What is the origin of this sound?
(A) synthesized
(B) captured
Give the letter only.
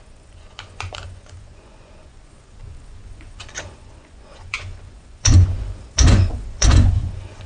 A